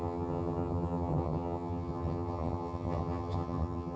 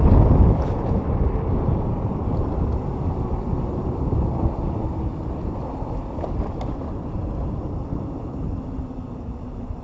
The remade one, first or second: first